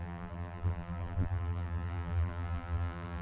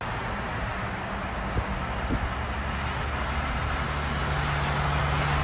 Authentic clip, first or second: second